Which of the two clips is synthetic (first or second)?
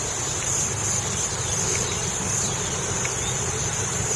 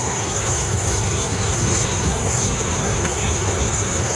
second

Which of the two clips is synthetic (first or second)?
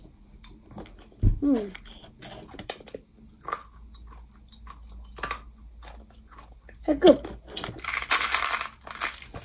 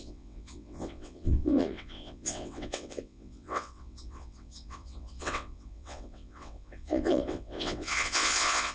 second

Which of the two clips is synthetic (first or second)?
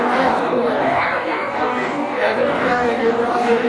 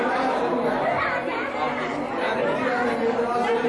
first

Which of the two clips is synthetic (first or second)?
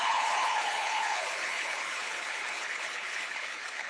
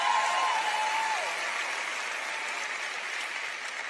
first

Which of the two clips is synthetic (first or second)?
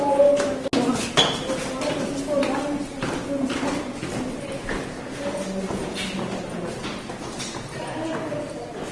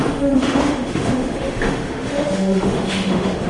second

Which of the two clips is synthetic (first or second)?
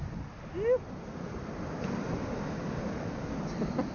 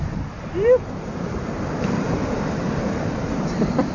second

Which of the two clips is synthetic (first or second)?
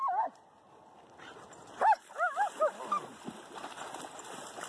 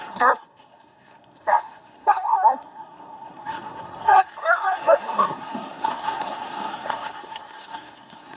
second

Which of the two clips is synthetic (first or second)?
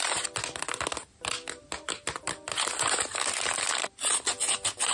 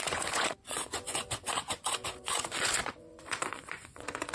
second